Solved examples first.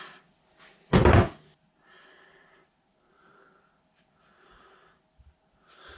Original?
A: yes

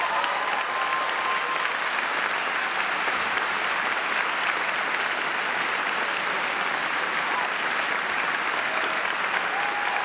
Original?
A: yes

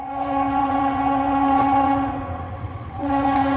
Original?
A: no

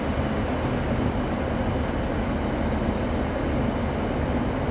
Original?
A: yes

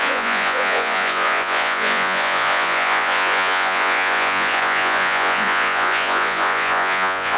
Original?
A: no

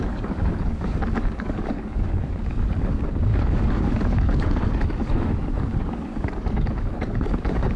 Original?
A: no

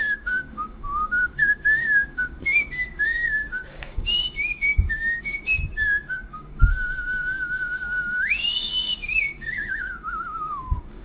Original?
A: no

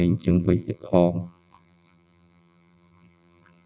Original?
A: no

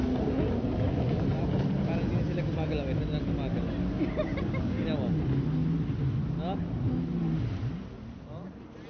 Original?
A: yes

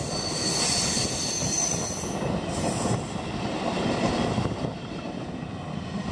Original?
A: yes